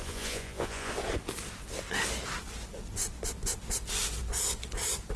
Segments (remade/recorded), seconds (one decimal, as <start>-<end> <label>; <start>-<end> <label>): 0.0-0.9 remade; 0.9-5.2 recorded